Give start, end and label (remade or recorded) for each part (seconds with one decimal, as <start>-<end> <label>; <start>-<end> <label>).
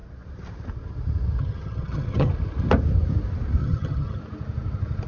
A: 0.0-1.4 recorded; 1.4-2.3 remade; 2.3-3.6 recorded; 3.6-4.2 remade; 4.2-5.1 recorded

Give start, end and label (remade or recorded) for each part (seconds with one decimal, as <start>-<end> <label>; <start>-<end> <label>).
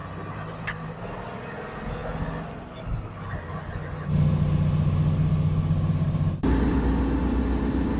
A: 0.0-8.0 recorded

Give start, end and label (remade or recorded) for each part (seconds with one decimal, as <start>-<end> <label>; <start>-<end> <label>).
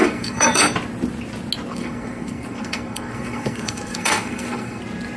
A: 0.0-0.6 remade; 0.6-1.7 recorded; 1.7-4.8 remade; 4.8-5.2 recorded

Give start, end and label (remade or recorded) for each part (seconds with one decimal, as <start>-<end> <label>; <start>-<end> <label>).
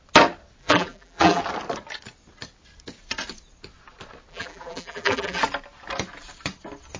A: 0.0-0.6 recorded; 0.6-1.4 remade; 1.4-4.3 recorded; 4.3-5.4 remade; 5.4-7.0 recorded